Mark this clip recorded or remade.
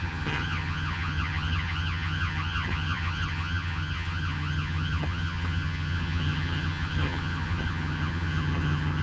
remade